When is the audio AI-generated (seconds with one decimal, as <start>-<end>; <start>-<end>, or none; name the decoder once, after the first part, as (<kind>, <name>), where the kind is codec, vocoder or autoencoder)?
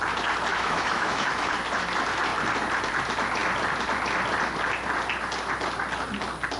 0.5-1.5 (autoencoder, DAC-VAE)